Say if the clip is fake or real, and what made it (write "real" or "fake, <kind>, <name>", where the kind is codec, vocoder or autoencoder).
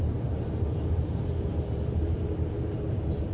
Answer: fake, vocoder, BigVGAN v2